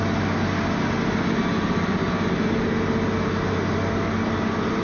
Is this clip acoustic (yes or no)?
yes